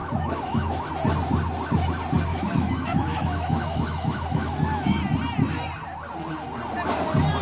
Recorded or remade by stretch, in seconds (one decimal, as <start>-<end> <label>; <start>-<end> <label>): 0.0-0.9 remade; 0.9-2.3 recorded; 2.3-5.0 remade; 5.0-7.4 recorded